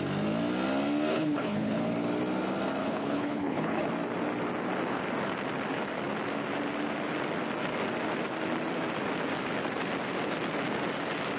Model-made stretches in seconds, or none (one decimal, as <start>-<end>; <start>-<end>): 1.1-1.8; 2.8-3.9

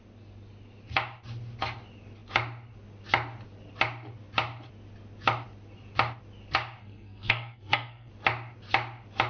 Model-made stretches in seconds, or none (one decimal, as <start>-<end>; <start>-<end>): 6.8-8.1

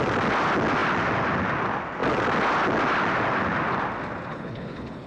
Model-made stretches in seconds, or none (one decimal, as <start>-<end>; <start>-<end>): 4.3-5.1

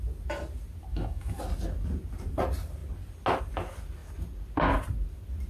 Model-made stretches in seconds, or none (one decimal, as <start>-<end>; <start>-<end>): 0.9-1.4

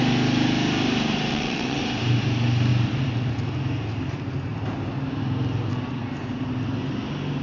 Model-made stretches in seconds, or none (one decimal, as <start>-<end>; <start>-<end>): 1.3-1.8

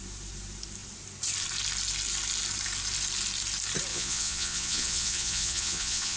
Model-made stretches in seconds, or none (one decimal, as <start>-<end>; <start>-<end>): 3.9-6.2

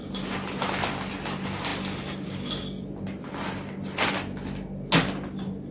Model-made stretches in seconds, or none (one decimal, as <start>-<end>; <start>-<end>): none

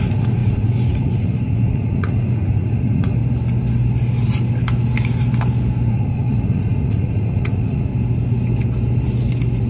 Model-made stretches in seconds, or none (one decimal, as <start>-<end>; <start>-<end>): 0.0-3.2; 5.9-7.9